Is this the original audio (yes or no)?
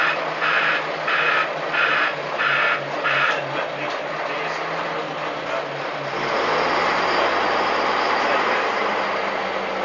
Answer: yes